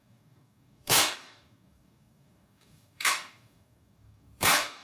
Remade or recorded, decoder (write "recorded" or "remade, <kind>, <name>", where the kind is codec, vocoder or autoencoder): remade, codec, DAC